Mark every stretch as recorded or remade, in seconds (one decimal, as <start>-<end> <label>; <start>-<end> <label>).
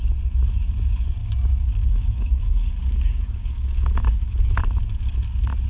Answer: 0.0-1.2 recorded; 1.2-4.6 remade; 4.6-5.7 recorded